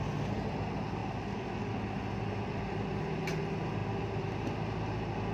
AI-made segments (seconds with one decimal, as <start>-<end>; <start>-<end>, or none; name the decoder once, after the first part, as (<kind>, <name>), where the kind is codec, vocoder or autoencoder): none